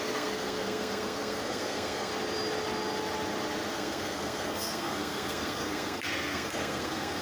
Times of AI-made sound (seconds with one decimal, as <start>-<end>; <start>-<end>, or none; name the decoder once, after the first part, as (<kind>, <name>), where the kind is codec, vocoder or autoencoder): 0.0-2.1 (codec, SNAC); 3.7-7.2